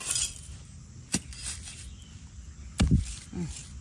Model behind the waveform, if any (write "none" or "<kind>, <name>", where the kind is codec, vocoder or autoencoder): none